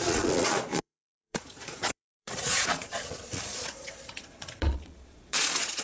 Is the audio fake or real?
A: fake